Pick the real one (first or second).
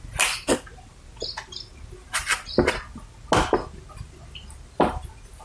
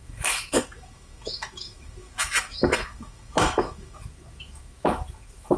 first